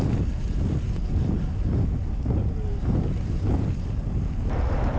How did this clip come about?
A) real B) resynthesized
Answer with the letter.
A